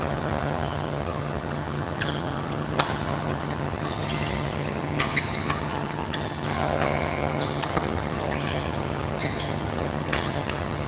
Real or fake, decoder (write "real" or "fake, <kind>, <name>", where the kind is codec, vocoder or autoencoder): fake, vocoder, HiFi-GAN